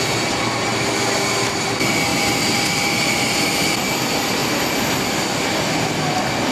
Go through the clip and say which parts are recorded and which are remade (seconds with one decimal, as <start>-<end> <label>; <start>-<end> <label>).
0.0-6.5 recorded